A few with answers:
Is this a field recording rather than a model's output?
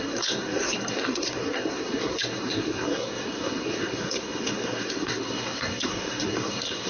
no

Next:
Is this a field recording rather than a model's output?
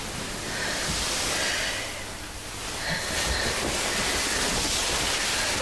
yes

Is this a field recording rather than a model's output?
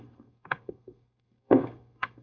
no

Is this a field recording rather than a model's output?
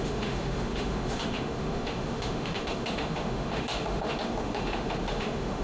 no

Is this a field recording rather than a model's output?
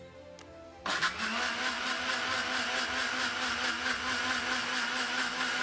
yes